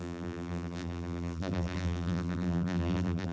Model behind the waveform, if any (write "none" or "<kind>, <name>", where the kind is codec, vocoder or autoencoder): vocoder, BigVGAN v2